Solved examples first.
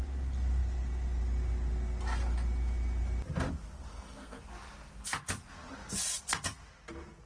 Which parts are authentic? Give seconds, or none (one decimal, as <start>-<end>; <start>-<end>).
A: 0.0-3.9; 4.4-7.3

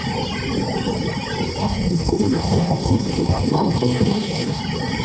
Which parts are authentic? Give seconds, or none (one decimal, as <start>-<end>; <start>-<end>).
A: 0.0-1.6; 4.6-5.0

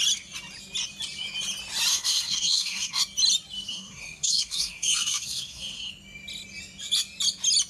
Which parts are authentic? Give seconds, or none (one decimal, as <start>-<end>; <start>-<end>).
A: 0.0-1.9; 3.0-3.7; 5.9-7.7

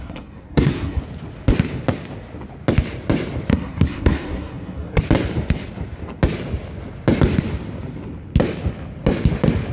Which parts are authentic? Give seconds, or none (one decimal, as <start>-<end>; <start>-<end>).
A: 1.0-3.5; 5.0-9.7